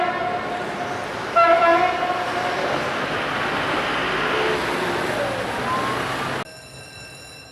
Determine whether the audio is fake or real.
real